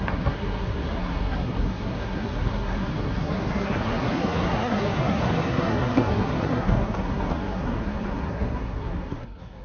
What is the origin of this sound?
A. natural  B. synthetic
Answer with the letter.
B